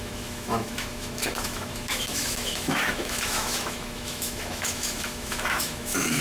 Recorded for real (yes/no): no